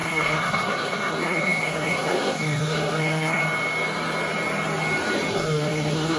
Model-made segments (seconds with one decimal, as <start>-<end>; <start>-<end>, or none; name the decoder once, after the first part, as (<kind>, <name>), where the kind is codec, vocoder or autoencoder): 0.0-3.4 (codec, SNAC); 5.3-6.2